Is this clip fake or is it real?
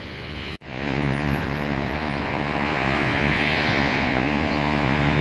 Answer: fake